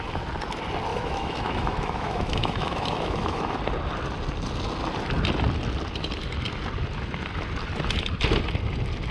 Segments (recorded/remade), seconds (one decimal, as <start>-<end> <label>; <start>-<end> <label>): 0.0-0.9 recorded; 0.9-3.6 remade; 3.6-9.1 recorded